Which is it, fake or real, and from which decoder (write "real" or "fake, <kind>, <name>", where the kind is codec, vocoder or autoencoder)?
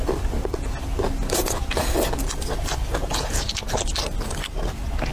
real